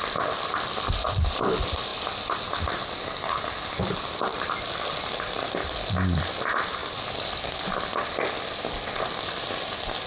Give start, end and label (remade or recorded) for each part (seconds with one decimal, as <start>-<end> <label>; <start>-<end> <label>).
0.0-10.1 recorded